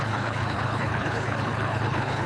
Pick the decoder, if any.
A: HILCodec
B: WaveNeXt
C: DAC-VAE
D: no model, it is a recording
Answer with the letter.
A